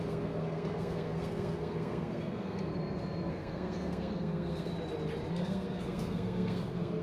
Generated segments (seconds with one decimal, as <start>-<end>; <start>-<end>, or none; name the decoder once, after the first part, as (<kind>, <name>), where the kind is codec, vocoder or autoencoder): 0.0-2.7 (codec, SNAC); 3.3-4.7; 5.3-7.0